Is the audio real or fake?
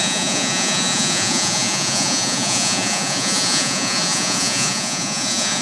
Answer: fake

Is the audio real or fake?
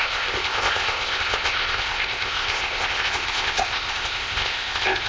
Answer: fake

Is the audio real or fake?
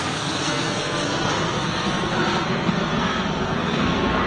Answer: fake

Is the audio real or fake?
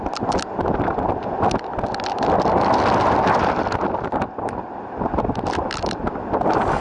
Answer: real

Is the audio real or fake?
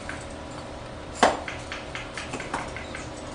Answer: fake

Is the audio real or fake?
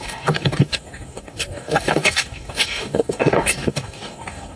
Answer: fake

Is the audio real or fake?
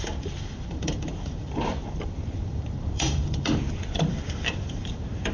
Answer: fake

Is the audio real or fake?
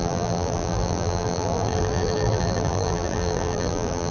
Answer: fake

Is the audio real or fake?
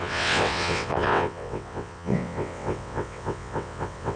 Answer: fake